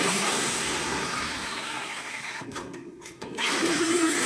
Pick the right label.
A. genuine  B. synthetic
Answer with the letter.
B